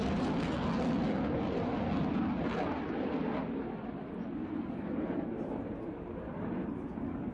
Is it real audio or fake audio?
real